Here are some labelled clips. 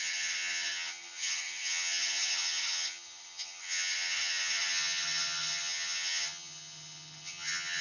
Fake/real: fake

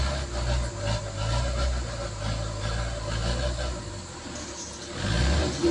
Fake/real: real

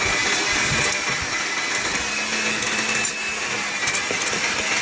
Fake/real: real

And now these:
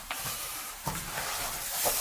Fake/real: fake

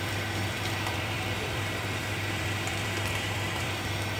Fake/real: fake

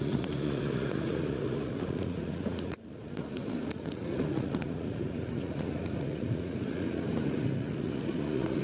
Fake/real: fake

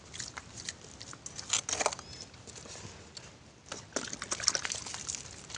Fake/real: real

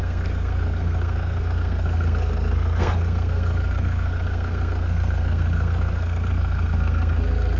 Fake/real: fake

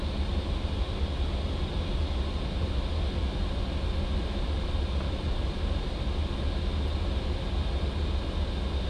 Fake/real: real